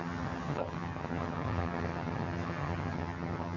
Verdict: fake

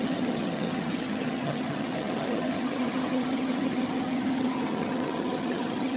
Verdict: fake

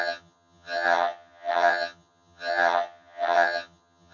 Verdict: fake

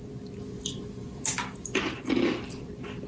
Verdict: real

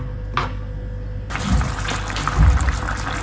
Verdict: real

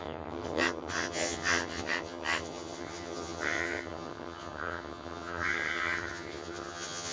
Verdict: fake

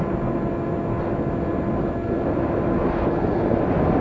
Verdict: real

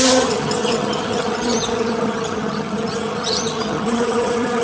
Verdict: fake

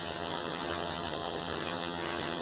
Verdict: fake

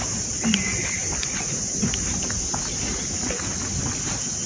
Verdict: real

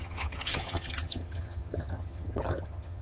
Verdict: fake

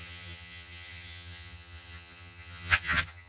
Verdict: fake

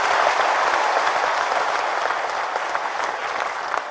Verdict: real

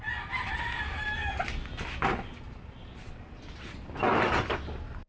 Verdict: real